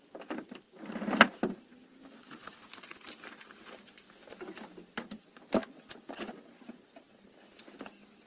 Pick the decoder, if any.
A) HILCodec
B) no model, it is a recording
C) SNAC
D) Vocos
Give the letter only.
B